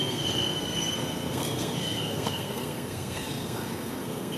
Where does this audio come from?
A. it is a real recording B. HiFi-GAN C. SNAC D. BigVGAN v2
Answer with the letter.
C